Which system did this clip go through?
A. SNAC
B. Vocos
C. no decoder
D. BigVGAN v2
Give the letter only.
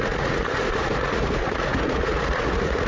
B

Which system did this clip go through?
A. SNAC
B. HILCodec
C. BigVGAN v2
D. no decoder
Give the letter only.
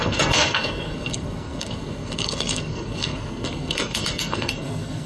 A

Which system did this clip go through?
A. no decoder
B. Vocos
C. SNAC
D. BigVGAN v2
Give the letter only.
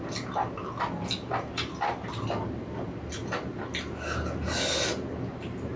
A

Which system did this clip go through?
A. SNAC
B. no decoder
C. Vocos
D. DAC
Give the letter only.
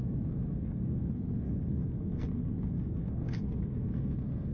A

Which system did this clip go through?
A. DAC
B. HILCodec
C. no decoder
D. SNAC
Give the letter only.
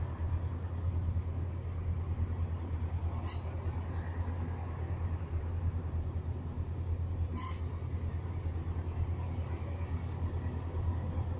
C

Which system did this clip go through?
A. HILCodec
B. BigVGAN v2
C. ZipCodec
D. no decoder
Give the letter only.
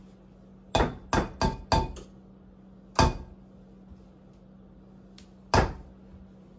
D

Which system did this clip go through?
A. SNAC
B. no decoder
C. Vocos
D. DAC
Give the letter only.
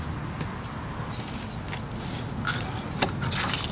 B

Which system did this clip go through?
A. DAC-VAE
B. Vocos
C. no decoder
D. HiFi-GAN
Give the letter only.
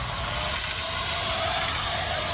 C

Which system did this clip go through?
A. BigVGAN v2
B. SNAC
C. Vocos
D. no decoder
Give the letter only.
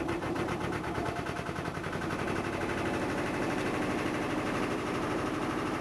A